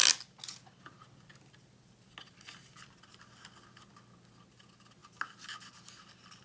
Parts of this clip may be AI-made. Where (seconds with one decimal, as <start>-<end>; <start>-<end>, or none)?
none